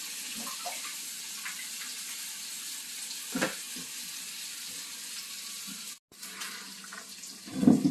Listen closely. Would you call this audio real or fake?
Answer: real